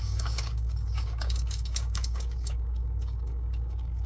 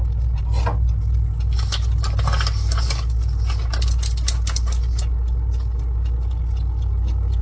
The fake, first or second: first